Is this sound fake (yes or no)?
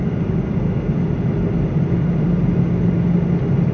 no